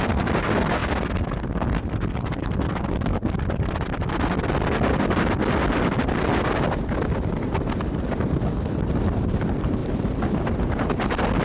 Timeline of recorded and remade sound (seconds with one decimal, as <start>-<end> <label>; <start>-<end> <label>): 0.0-0.8 recorded; 0.8-4.1 remade; 4.1-9.8 recorded; 9.8-10.5 remade; 10.5-11.4 recorded